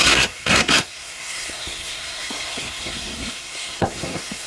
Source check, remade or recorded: remade